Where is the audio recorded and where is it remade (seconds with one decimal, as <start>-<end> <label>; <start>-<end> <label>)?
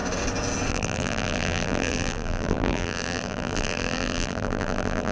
0.0-0.7 recorded; 0.7-5.1 remade